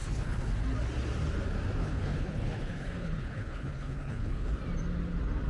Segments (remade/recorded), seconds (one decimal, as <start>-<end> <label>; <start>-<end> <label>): 0.0-0.5 remade; 0.5-1.8 recorded; 1.8-4.5 remade; 4.5-5.5 recorded